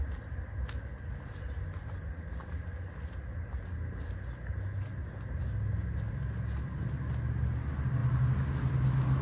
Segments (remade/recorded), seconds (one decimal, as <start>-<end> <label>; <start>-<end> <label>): 0.0-9.2 recorded